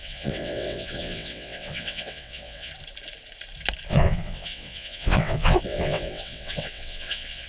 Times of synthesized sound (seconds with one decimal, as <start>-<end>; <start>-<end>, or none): 0.0-2.7; 3.9-7.5